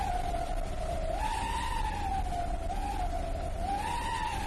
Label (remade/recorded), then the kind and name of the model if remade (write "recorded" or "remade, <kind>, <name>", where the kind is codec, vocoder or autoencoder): recorded